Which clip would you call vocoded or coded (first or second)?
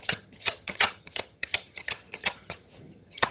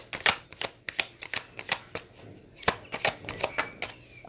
first